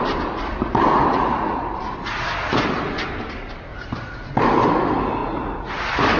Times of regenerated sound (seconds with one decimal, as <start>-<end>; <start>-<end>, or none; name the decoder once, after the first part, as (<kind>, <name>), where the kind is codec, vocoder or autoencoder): 1.1-1.8 (vocoder, Vocos); 3.7-4.3; 5.2-5.7